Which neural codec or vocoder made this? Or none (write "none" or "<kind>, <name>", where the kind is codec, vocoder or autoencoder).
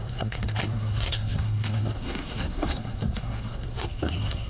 codec, SNAC